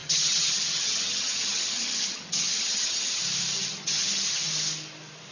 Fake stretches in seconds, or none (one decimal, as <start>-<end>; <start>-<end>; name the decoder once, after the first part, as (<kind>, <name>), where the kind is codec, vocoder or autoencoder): 0.0-3.2 (vocoder, HiFi-GAN); 3.7-4.5